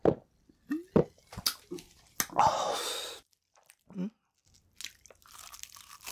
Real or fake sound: real